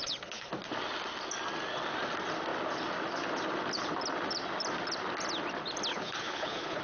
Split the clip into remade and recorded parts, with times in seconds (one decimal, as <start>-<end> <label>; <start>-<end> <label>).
0.0-0.5 remade; 0.5-5.9 recorded; 5.9-6.8 remade